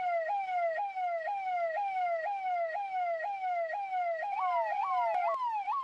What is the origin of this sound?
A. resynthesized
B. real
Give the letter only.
B